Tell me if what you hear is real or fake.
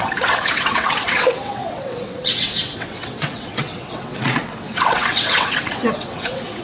fake